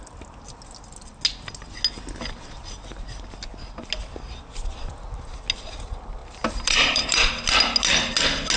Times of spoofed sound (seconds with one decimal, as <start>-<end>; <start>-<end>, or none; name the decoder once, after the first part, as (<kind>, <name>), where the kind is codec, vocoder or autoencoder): 6.2-7.3 (vocoder, BigVGAN v2)

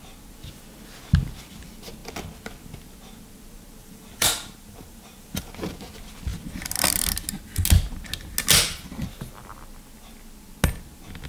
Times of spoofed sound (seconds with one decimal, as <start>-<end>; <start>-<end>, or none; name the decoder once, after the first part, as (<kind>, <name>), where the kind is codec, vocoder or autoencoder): 3.8-5.5 (vocoder, BigVGAN v2)

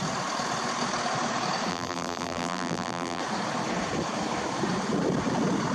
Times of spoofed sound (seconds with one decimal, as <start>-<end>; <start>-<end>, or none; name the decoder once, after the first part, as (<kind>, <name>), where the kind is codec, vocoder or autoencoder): 1.7-3.2 (vocoder, BigVGAN v2)

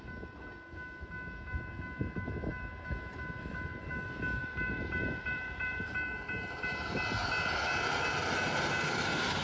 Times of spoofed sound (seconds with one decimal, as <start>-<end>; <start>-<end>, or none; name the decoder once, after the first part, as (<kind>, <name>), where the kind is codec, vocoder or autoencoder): 4.4-6.9 (vocoder, BigVGAN v2)

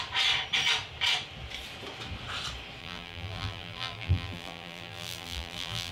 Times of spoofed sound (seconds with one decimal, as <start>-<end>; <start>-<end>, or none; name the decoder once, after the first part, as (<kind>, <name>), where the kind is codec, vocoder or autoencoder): 2.8-5.9 (vocoder, BigVGAN v2)

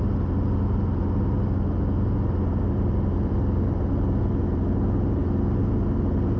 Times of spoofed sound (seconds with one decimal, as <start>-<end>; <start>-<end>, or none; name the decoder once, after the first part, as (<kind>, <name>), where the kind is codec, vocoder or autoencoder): 2.5-4.2 (vocoder, BigVGAN v2)

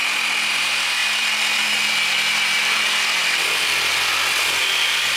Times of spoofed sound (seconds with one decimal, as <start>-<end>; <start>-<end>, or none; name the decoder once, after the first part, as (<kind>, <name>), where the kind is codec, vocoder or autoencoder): 0.6-3.9 (vocoder, BigVGAN v2); 4.8-5.2